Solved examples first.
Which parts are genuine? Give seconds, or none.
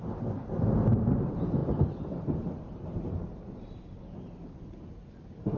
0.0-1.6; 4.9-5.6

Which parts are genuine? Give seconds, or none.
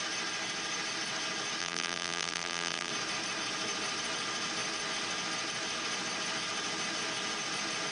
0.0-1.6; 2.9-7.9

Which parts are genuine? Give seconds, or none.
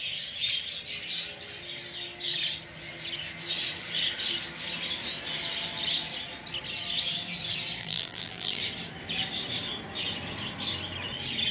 0.0-7.8; 8.6-11.5